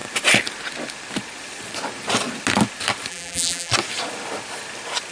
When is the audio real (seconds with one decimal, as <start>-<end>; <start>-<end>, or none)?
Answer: 0.0-3.1; 3.7-5.1